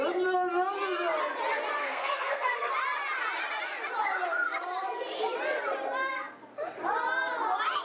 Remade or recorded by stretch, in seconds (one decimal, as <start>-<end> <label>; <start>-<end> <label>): 0.0-1.8 recorded; 1.8-2.7 remade; 2.7-7.8 recorded